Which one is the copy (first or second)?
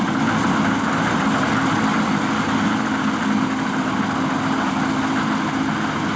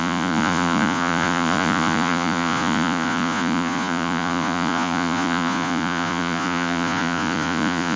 second